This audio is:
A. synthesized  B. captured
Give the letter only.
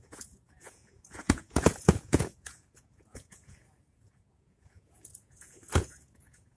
A